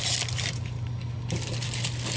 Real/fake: fake